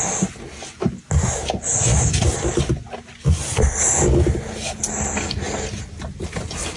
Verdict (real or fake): real